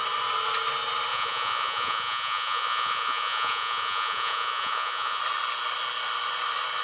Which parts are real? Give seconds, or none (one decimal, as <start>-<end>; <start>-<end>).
0.0-1.1; 5.2-6.8